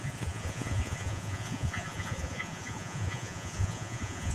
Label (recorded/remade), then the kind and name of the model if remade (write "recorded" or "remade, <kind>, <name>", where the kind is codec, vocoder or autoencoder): remade, vocoder, Vocos